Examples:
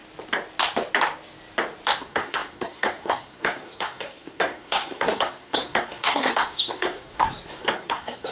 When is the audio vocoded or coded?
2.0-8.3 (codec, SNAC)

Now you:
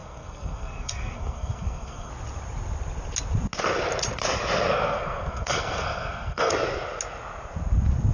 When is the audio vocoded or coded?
0.0-2.1 (codec, SNAC); 4.7-6.5

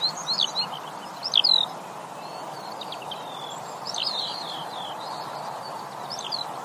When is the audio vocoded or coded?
none

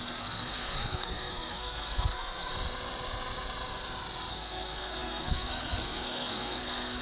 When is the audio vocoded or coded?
0.0-2.5 (codec, SNAC); 4.3-7.0

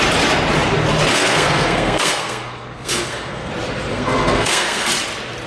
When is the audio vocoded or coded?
1.1-3.5 (codec, SNAC); 3.9-4.9

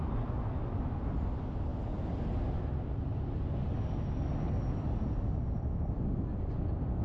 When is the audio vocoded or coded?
none